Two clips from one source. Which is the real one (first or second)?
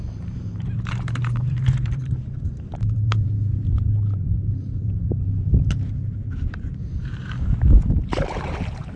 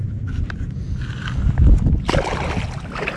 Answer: second